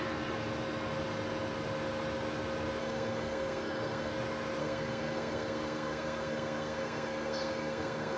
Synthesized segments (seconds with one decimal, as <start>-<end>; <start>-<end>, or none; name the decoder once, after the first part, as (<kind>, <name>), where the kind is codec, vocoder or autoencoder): 2.8-4.1 (codec, SNAC); 4.6-8.2